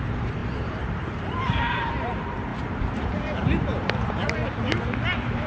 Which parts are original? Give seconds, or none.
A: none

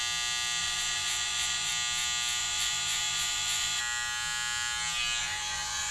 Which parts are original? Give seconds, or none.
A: 0.0-0.6; 1.7-2.4; 3.8-5.2

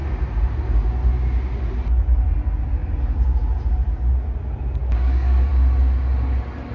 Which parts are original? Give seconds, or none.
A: 0.0-4.8; 5.5-6.7